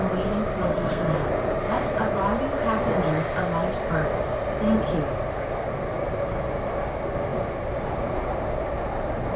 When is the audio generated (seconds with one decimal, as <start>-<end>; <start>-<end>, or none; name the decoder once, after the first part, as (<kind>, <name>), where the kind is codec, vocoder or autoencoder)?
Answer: 0.7-1.3 (codec, SNAC)